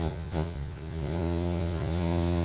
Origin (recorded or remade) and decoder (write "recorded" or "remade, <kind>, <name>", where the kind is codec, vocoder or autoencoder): remade, vocoder, Vocos